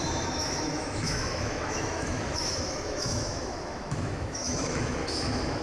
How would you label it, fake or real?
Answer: fake